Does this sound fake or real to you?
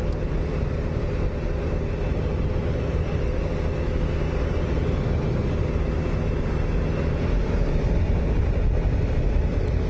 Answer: real